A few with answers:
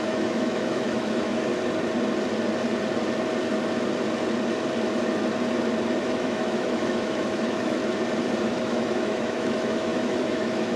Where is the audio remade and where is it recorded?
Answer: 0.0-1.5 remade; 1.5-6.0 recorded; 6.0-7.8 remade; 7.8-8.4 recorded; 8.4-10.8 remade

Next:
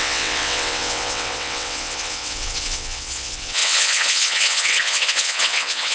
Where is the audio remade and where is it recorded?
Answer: 0.0-5.9 remade

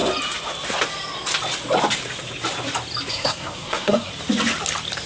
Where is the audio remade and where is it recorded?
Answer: 0.0-3.1 recorded; 3.1-4.1 remade; 4.1-5.1 recorded

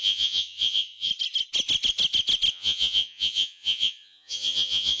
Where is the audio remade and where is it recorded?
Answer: 0.0-1.1 remade; 1.1-2.5 recorded; 2.5-5.0 remade

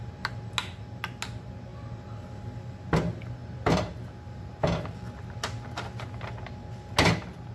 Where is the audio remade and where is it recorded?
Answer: 0.0-7.5 recorded

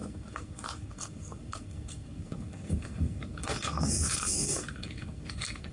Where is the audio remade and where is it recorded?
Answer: 0.0-5.7 remade

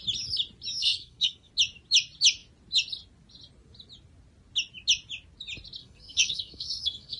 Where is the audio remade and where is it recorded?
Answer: 0.0-0.8 recorded; 0.8-1.5 remade; 1.5-5.8 recorded; 5.8-7.2 remade